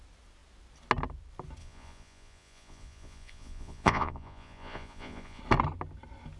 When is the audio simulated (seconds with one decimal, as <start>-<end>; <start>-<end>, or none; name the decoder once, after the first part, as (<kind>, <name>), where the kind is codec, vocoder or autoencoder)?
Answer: 1.6-5.4 (vocoder, Vocos)